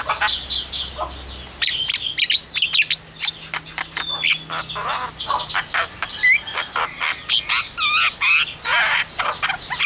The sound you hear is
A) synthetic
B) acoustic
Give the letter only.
B